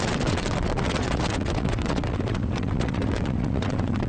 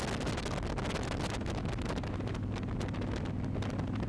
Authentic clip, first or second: second